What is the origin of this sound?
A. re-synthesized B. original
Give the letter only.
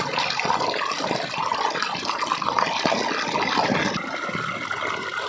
B